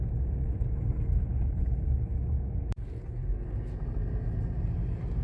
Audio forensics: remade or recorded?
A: recorded